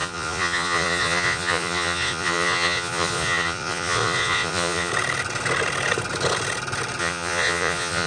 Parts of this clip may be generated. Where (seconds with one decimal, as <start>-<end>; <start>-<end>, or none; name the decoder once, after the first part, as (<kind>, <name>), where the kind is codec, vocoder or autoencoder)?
0.0-4.9 (vocoder, Vocos); 7.0-8.1